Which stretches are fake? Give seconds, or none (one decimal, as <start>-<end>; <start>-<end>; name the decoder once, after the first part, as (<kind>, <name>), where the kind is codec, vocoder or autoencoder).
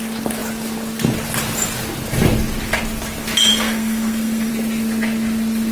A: 3.5-4.5 (codec, SNAC)